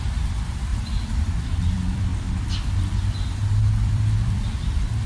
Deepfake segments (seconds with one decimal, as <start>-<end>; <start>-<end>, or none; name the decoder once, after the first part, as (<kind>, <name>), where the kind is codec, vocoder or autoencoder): 0.0-0.7 (vocoder, BigVGAN v2); 1.6-2.1; 3.6-5.1